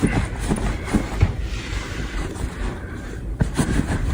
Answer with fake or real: fake